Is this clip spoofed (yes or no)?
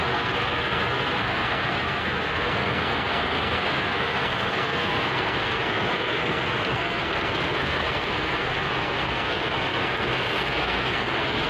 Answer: yes